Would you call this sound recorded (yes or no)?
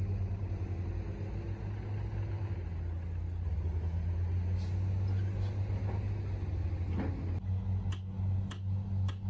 yes